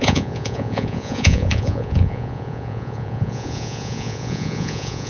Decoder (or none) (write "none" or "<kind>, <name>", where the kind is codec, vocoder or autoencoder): vocoder, Vocos